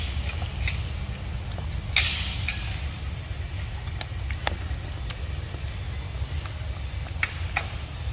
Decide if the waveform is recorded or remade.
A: recorded